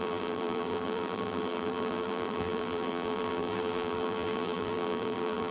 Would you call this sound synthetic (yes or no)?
yes